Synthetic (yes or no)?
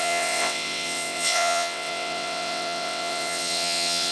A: yes